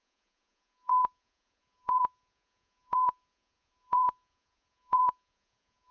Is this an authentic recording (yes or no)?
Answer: no